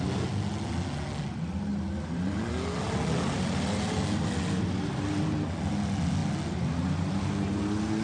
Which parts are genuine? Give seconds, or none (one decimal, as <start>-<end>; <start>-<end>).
0.0-8.0